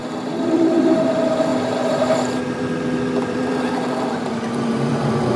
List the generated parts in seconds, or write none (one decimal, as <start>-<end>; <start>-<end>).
0.0-1.5; 3.2-5.4